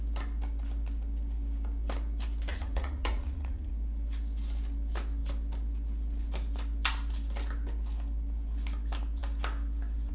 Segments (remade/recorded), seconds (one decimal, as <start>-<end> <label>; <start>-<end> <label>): 0.0-2.5 recorded; 2.5-3.7 remade; 3.7-10.1 recorded